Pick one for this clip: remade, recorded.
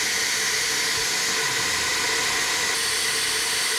recorded